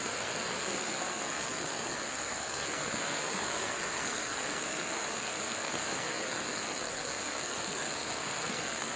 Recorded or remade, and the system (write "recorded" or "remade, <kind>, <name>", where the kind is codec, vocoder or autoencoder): remade, codec, SNAC